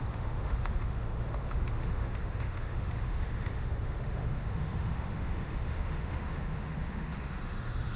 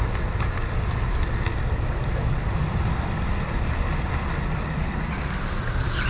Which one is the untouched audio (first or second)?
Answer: second